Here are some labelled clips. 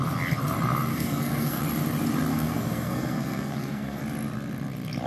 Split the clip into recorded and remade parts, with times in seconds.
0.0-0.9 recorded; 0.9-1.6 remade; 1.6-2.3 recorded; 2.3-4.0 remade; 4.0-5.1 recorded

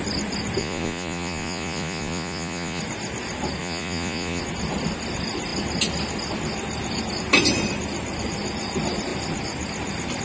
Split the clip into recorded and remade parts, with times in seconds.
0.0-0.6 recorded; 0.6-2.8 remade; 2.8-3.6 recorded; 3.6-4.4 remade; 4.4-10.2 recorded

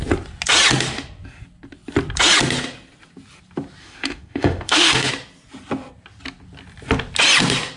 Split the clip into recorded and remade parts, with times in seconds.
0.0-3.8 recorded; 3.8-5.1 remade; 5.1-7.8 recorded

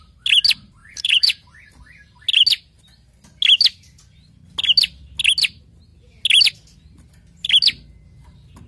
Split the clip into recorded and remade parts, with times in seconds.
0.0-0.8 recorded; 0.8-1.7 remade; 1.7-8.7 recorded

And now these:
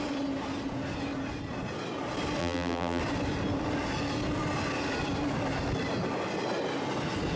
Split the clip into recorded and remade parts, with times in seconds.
0.0-2.4 recorded; 2.4-3.0 remade; 3.0-7.4 recorded

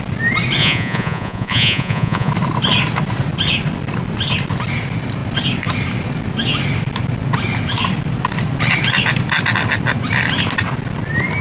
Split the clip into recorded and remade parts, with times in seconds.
0.0-0.6 recorded; 0.6-2.3 remade; 2.3-11.4 recorded

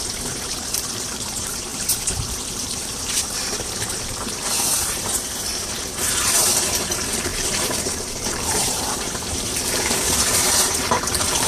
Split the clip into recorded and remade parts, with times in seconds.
0.0-11.5 remade

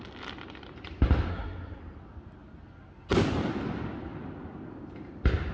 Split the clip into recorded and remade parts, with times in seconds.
0.0-1.3 recorded; 1.3-1.8 remade; 1.8-5.5 recorded